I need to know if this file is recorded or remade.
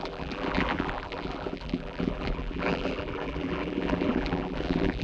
remade